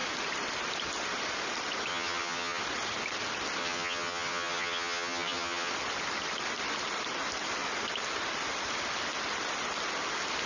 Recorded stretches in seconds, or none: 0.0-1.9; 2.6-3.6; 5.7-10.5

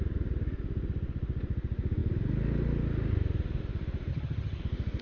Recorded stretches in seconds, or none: 0.0-4.1; 4.6-5.0

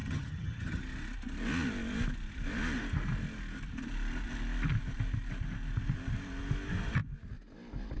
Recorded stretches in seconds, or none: 0.8-8.0

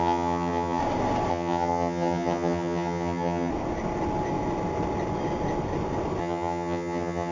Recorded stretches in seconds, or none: 0.8-1.3; 3.5-6.2

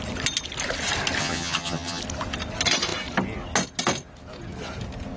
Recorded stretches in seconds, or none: 0.0-1.2; 2.0-5.2

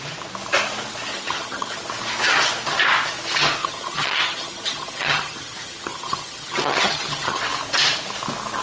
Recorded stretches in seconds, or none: 0.0-1.1; 1.8-3.6; 7.4-8.6

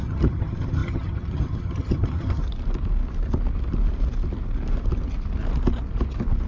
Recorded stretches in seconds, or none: 2.4-6.5